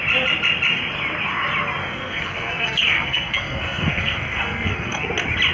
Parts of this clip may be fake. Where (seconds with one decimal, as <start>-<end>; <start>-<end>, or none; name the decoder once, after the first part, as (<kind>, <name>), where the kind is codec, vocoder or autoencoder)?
1.8-5.1 (codec, SNAC)